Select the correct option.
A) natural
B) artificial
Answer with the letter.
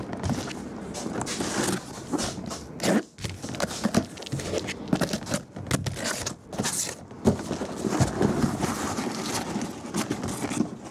A